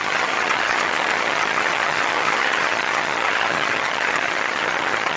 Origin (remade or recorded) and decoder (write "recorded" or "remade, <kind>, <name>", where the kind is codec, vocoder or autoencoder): remade, vocoder, HiFi-GAN